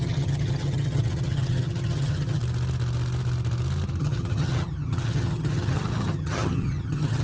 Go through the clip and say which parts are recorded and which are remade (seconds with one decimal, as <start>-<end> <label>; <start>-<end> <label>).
0.0-2.4 remade; 2.4-4.0 recorded; 4.0-7.2 remade